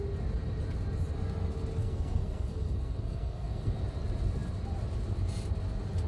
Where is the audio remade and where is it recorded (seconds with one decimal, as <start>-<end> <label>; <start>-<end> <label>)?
0.0-1.8 recorded; 1.8-3.7 remade; 3.7-6.1 recorded